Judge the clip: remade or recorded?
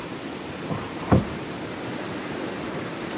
recorded